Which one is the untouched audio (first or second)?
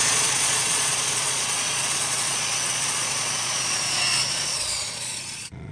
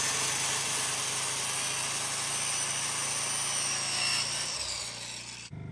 second